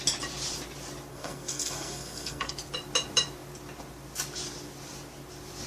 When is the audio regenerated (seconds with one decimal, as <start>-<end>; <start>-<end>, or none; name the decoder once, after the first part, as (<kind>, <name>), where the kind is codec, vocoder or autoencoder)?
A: 1.1-2.5 (codec, SNAC)